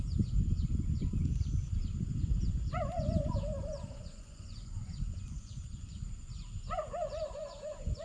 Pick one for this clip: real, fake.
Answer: fake